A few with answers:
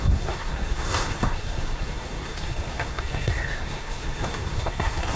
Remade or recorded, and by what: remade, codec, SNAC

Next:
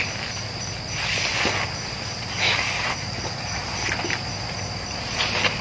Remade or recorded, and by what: recorded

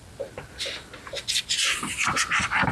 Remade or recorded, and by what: recorded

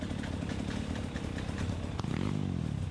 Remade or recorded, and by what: recorded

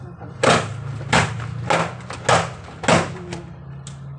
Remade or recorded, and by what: recorded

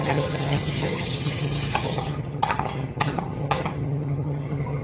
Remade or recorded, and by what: remade, vocoder, HiFi-GAN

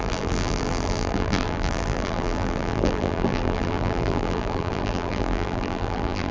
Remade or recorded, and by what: remade, vocoder, BigVGAN v2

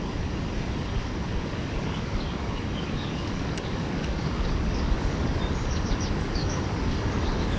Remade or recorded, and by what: remade, codec, DAC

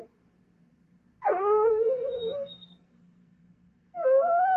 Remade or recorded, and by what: remade, codec, SNAC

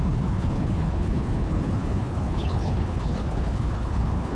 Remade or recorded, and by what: remade, codec, HILCodec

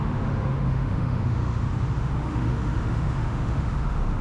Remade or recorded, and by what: remade, autoencoder, DAC-VAE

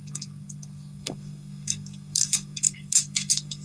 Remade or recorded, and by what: remade, codec, SNAC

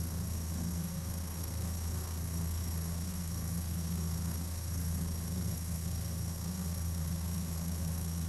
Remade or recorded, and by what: remade, codec, SNAC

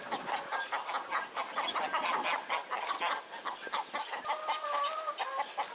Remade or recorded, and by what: recorded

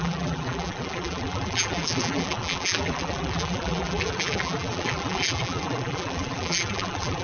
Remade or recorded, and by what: remade, vocoder, BigVGAN v2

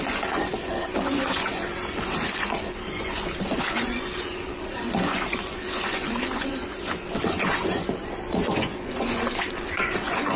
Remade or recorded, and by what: remade, vocoder, Vocos